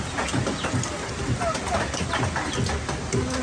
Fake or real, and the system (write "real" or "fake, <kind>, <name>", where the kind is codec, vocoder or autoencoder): real